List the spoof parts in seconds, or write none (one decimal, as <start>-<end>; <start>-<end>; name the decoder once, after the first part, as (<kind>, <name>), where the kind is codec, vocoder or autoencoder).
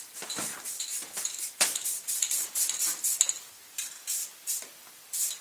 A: none